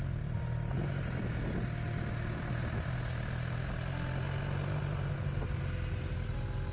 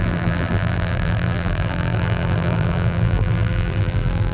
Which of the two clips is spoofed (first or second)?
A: second